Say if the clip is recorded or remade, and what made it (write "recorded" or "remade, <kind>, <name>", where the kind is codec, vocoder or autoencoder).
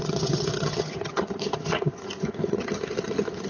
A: remade, vocoder, HiFi-GAN